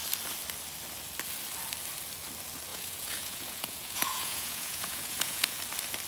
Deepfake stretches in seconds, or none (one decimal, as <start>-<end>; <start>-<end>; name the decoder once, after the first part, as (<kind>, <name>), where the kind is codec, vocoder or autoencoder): 2.7-5.6 (vocoder, Vocos)